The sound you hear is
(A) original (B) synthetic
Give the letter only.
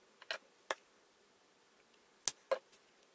A